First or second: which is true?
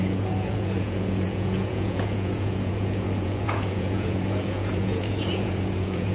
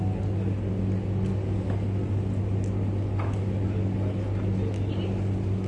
second